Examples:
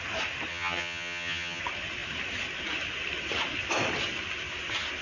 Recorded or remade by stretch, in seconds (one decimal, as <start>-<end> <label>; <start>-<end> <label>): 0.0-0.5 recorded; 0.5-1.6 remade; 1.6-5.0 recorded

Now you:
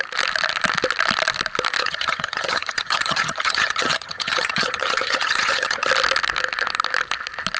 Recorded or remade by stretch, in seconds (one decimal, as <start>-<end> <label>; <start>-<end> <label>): 0.0-1.8 recorded; 1.8-5.9 remade; 5.9-7.6 recorded

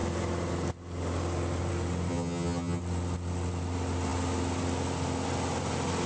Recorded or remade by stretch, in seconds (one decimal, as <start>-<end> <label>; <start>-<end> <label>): 0.0-2.1 recorded; 2.1-2.8 remade; 2.8-6.1 recorded

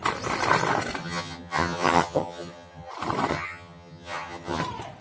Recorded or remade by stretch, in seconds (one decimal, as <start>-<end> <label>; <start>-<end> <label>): 0.0-1.0 recorded; 1.0-2.9 remade; 2.9-3.3 recorded; 3.3-4.6 remade; 4.6-5.0 recorded

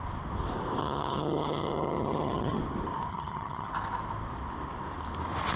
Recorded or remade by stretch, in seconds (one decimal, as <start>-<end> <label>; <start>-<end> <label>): 0.0-0.8 recorded; 0.8-2.6 remade; 2.6-3.1 recorded; 3.1-3.7 remade; 3.7-5.6 recorded